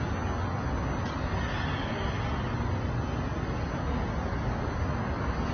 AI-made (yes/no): no